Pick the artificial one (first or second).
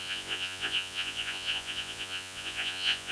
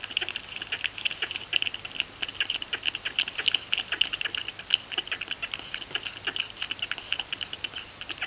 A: first